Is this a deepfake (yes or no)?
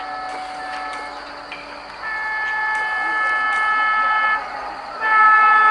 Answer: no